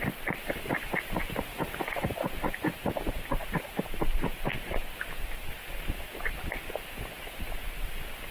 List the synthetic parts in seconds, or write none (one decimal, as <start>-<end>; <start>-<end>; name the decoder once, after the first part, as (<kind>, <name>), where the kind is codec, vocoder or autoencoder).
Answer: 1.5-4.4 (vocoder, BigVGAN v2)